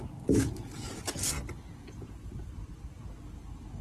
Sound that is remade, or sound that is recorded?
recorded